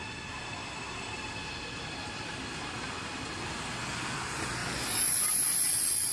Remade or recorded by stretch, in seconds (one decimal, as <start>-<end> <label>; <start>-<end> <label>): 0.0-6.1 recorded